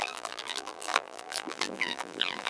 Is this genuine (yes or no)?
no